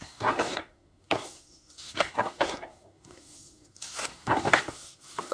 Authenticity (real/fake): fake